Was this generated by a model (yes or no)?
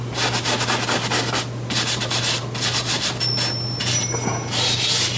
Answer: no